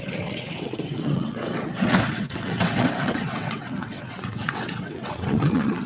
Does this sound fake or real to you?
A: fake